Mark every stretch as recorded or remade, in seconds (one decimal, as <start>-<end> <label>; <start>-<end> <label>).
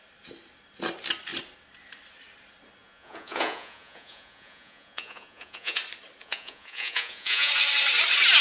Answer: 0.0-2.8 recorded; 2.8-5.8 remade; 5.8-6.2 recorded; 6.2-7.5 remade; 7.5-8.4 recorded